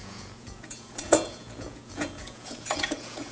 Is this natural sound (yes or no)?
no